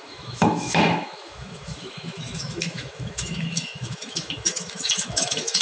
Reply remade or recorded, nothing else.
remade